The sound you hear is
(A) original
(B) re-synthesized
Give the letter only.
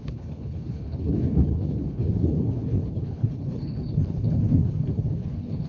B